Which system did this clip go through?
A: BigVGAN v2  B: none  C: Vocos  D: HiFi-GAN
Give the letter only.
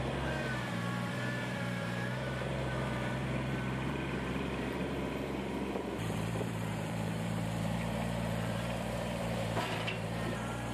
A